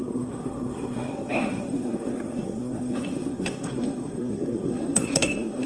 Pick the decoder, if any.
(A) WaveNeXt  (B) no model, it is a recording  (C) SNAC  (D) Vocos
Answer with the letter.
C